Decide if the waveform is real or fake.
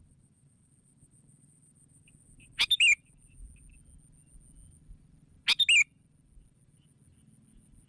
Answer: real